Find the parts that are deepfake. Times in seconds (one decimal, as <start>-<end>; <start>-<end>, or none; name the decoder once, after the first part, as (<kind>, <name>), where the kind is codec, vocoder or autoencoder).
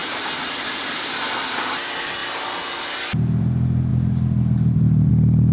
0.0-1.0 (vocoder, BigVGAN v2); 3.9-5.1